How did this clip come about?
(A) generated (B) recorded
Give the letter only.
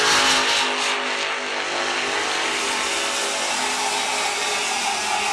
B